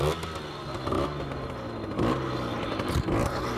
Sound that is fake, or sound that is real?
real